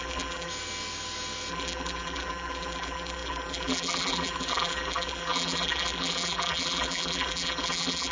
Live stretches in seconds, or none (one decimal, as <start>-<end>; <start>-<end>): 0.5-1.5